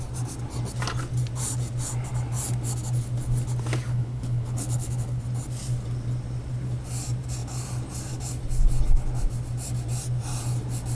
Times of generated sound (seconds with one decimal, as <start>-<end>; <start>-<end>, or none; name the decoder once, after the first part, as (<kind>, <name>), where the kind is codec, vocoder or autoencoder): 3.9-5.2 (codec, HILCodec)